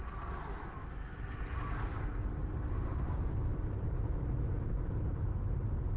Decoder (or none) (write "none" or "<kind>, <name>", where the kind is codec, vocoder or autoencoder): none